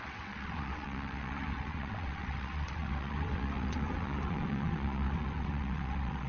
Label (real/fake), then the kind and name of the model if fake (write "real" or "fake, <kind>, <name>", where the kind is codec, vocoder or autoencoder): fake, vocoder, WaveNeXt